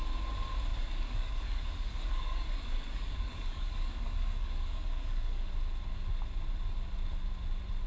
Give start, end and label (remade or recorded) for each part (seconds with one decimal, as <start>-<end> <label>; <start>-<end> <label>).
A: 0.0-0.7 recorded; 0.7-5.4 remade; 5.4-7.9 recorded